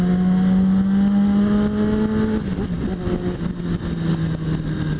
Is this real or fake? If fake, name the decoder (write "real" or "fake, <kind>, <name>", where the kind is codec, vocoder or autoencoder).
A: real